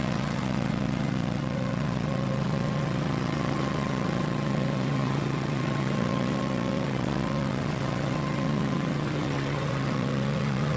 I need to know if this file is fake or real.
fake